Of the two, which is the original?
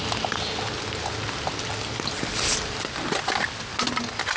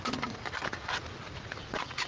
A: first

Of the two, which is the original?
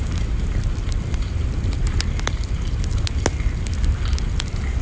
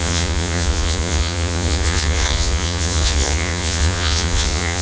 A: first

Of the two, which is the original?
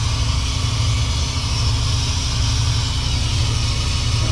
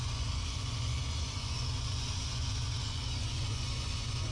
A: first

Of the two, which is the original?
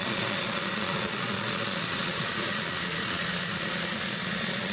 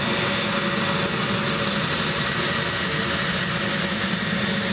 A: second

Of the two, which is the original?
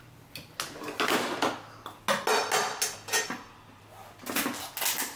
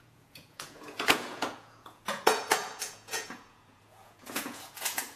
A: first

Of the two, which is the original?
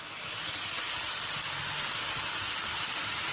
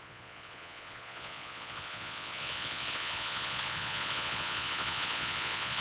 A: first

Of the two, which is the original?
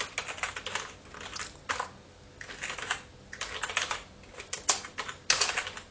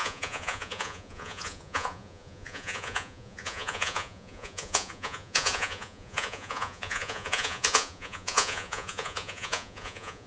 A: first